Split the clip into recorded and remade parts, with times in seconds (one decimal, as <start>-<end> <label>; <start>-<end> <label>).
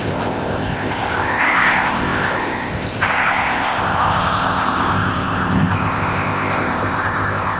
0.0-7.6 remade